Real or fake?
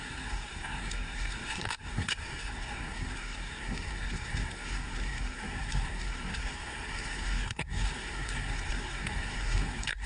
fake